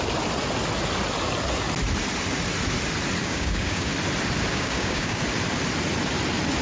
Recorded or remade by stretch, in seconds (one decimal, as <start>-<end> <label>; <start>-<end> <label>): 0.0-3.2 recorded; 3.2-3.9 remade; 3.9-4.5 recorded; 4.5-5.2 remade; 5.2-6.6 recorded